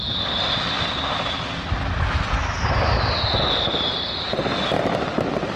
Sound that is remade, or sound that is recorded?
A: recorded